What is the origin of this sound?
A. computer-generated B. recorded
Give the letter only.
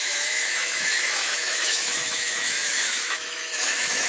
A